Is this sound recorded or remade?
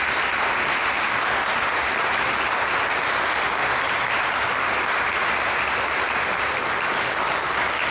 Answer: recorded